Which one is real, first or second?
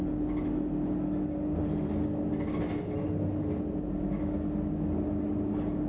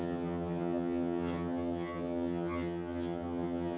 first